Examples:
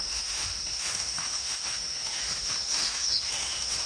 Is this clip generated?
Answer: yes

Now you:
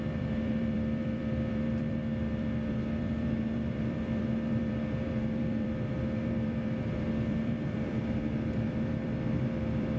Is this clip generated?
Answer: yes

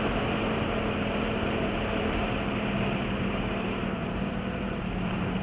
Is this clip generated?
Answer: yes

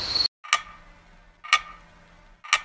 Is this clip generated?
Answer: no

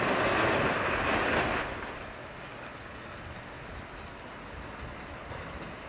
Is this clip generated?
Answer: no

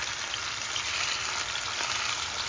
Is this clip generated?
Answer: no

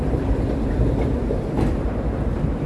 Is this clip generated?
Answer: no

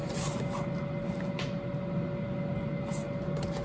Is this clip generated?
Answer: no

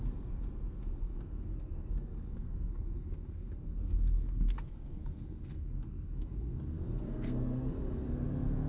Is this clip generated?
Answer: yes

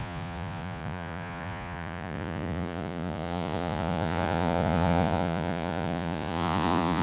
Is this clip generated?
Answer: yes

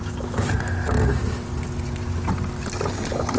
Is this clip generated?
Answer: no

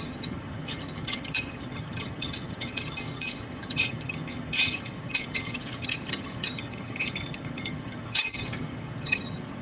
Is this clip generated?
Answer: yes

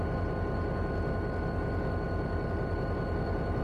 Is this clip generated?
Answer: no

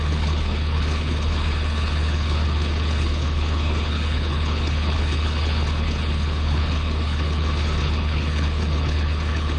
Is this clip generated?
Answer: yes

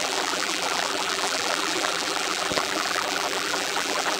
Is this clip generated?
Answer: yes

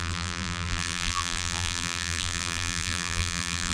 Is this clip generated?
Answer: yes